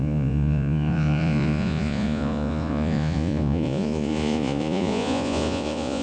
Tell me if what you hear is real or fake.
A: fake